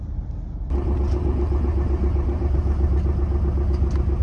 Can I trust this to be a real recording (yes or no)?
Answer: yes